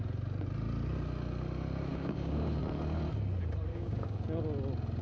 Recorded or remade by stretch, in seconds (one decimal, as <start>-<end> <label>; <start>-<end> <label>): 0.0-1.9 recorded; 1.9-2.6 remade; 2.6-3.7 recorded; 3.7-4.4 remade; 4.4-5.0 recorded